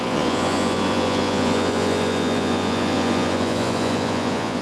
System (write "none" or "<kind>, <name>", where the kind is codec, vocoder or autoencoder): vocoder, Vocos